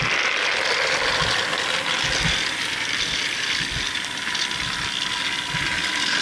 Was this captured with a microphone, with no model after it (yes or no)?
yes